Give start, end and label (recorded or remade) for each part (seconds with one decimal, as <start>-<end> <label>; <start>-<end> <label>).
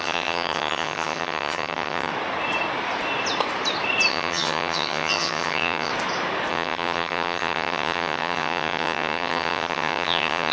0.0-2.1 remade; 2.1-4.1 recorded; 4.1-5.9 remade; 5.9-6.5 recorded; 6.5-10.5 remade